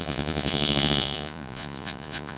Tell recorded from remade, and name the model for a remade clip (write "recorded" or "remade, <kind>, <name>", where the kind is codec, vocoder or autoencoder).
remade, vocoder, Vocos